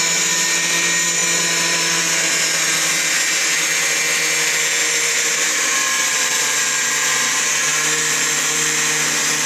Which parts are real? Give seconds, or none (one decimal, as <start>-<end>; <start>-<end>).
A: 0.0-1.2; 2.0-4.8; 7.1-7.7; 8.8-9.5